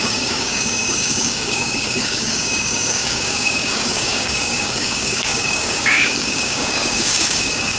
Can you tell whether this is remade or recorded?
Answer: remade